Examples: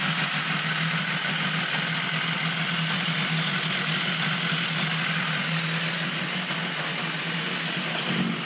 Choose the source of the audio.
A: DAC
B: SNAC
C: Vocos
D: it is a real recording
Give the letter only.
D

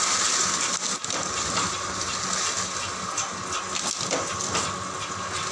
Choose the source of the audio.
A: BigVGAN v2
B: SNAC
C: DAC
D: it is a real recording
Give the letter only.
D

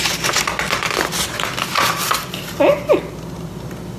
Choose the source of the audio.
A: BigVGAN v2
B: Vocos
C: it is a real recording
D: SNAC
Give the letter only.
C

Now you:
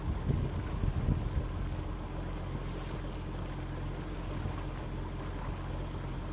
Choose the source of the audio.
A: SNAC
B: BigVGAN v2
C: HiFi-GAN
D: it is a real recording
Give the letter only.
D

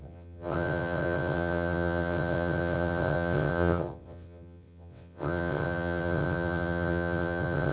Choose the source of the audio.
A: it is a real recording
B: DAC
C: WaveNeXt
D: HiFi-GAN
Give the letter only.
C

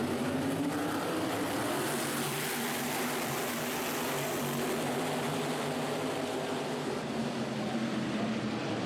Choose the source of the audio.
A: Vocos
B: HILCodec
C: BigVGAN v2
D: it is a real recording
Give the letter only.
C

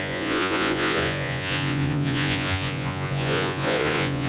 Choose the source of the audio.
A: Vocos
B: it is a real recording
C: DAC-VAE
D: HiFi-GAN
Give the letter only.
A